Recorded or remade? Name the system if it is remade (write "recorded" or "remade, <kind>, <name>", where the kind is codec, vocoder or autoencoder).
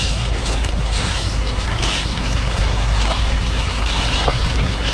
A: remade, codec, SNAC